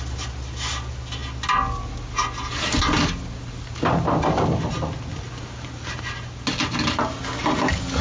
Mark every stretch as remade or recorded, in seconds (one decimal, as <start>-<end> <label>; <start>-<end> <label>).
0.0-8.0 recorded